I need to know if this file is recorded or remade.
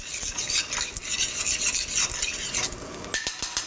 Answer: recorded